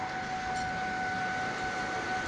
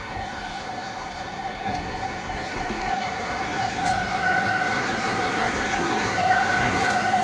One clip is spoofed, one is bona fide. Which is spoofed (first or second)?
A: second